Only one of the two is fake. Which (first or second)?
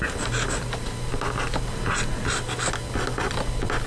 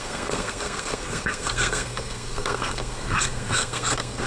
second